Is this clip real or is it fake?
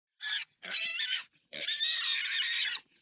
fake